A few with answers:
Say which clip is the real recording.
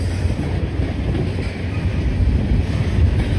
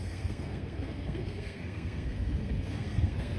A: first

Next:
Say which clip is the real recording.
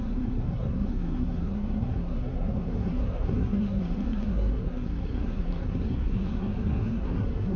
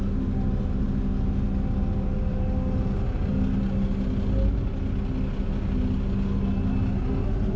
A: second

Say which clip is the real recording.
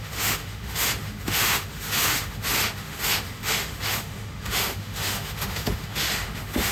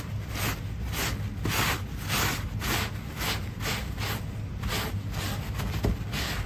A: second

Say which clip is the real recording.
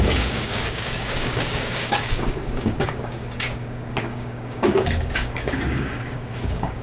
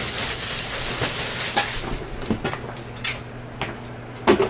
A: second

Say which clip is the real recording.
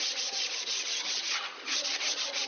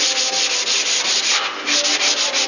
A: second